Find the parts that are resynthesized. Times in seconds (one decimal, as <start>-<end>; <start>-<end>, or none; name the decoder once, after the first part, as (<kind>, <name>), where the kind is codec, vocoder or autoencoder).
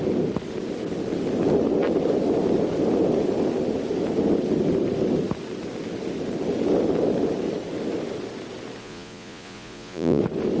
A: 8.8-10.2 (vocoder, Vocos)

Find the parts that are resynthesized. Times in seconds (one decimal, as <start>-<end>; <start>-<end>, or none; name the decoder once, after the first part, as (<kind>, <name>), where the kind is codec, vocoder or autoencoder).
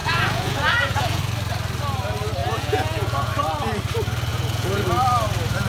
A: 0.0-1.2 (vocoder, Vocos); 2.4-3.3; 4.3-4.8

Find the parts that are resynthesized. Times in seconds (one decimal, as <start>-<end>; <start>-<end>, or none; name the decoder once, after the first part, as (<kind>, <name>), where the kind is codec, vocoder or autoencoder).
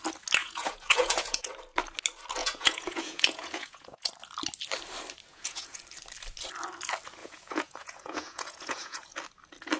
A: 0.4-1.5 (vocoder, Vocos); 2.4-4.1; 5.3-5.8; 7.2-9.1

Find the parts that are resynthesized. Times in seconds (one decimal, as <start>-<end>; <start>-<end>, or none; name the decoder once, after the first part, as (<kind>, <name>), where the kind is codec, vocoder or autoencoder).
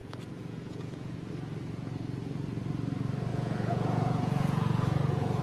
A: 0.0-1.3 (vocoder, Vocos); 3.3-5.4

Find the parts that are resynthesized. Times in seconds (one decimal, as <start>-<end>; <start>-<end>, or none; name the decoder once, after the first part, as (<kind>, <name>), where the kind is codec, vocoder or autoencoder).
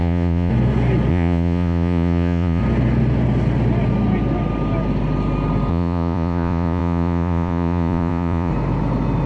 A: 0.0-0.5 (vocoder, Vocos); 1.1-2.6; 5.7-8.5